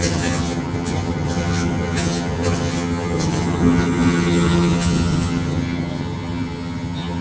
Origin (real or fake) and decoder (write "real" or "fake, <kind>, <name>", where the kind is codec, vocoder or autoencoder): fake, vocoder, HiFi-GAN